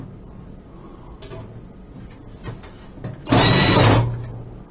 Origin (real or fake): real